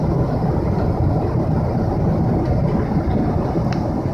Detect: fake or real real